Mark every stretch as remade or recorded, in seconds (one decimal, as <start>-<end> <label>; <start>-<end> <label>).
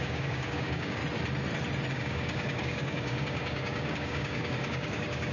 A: 0.0-1.0 remade; 1.0-1.9 recorded; 1.9-5.3 remade